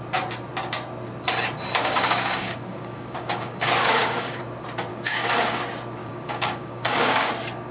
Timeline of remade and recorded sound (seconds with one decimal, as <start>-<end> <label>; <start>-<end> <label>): 0.0-1.8 recorded; 1.8-4.4 remade; 4.4-4.9 recorded; 4.9-5.6 remade; 5.6-6.0 recorded; 6.0-7.3 remade; 7.3-7.7 recorded